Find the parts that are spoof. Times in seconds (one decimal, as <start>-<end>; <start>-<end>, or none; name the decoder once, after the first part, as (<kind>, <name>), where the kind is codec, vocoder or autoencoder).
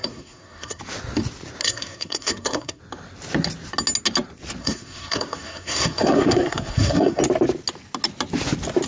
0.0-0.8 (codec, SNAC); 1.6-2.8; 4.6-7.2